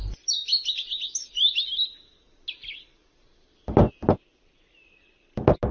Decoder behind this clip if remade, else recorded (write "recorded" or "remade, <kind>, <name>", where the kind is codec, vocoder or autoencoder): recorded